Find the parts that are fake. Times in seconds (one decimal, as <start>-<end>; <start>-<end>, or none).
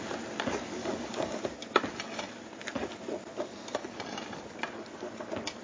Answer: 0.8-1.4